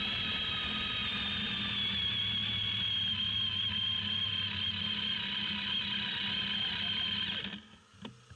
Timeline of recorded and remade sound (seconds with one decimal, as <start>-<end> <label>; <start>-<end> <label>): 0.0-8.4 recorded